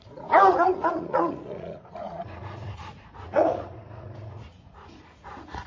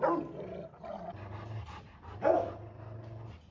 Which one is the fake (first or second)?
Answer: first